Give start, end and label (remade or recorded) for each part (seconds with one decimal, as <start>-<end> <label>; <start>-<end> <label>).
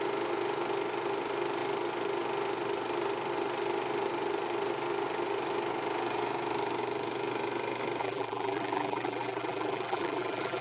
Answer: 0.0-8.0 recorded; 8.0-10.6 remade